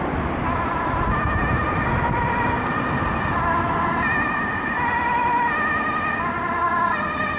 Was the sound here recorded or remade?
recorded